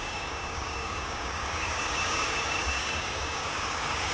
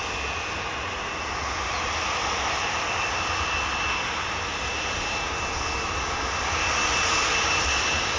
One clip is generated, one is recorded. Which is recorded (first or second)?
second